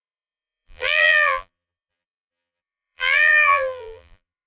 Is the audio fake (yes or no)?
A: yes